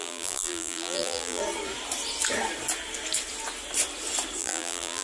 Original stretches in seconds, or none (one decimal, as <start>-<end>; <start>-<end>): 1.4-4.4